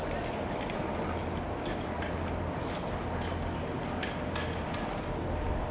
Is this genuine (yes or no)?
yes